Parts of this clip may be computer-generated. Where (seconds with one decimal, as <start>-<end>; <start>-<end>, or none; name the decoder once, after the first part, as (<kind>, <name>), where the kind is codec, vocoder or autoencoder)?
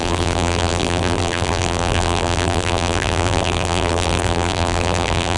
0.0-5.4 (vocoder, BigVGAN v2)